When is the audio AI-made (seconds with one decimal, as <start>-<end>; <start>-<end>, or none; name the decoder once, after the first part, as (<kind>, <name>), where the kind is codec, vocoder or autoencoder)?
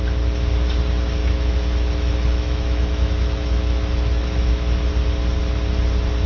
1.2-4.9 (autoencoder, DAC-VAE)